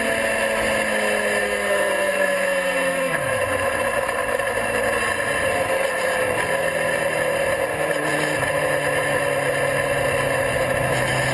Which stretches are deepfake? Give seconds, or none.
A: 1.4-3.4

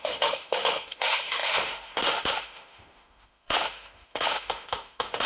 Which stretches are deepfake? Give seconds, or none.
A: 0.0-5.3

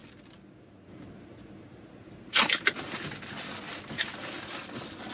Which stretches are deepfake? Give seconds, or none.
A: 3.1-5.1

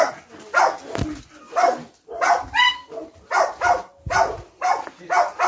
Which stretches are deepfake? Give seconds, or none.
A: none

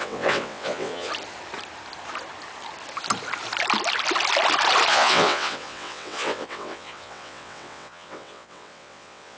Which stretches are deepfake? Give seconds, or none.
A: 0.0-1.1; 4.9-9.4

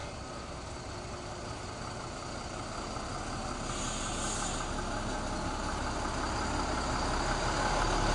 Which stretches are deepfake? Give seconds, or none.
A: none